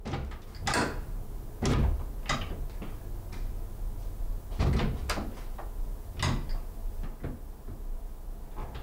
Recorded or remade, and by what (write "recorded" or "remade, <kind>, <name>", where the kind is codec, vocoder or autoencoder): recorded